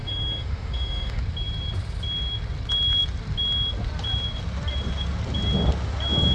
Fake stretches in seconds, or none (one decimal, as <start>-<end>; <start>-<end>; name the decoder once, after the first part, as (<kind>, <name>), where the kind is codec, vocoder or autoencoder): 0.0-1.2 (autoencoder, DAC-VAE)

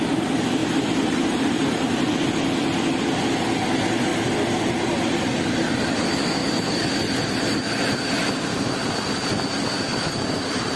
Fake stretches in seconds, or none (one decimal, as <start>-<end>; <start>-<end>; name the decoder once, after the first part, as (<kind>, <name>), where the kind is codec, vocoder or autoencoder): 9.9-10.8 (vocoder, BigVGAN v2)

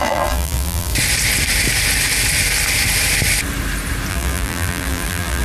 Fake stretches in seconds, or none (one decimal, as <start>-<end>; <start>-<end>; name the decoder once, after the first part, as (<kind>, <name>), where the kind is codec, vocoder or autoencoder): 0.0-0.9 (vocoder, BigVGAN v2); 4.1-5.4

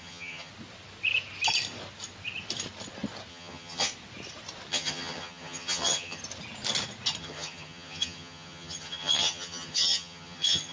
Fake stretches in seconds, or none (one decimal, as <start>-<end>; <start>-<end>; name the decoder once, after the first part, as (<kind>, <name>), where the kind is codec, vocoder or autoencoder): 0.0-0.5 (vocoder, HiFi-GAN); 3.3-3.9; 4.7-6.2; 7.2-10.7